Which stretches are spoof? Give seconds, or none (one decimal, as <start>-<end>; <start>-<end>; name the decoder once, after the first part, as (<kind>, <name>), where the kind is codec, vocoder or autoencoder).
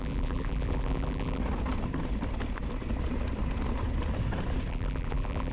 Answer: 0.0-1.4 (vocoder, BigVGAN v2); 4.7-5.5